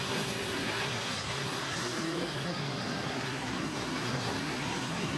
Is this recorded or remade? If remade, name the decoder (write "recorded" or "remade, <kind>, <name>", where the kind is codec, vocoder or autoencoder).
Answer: remade, codec, SNAC